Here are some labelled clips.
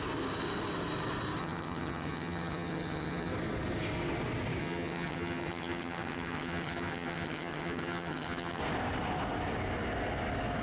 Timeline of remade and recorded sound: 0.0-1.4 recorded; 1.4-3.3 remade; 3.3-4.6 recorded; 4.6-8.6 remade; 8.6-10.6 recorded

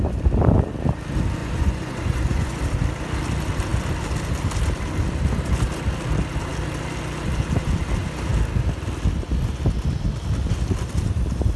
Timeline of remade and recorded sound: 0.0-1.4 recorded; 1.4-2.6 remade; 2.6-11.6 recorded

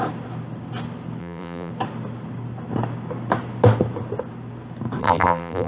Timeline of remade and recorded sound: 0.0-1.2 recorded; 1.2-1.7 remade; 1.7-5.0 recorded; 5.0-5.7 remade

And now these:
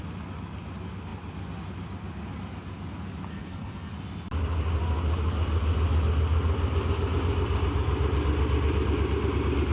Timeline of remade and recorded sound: 0.0-3.3 recorded; 3.3-3.9 remade; 3.9-9.7 recorded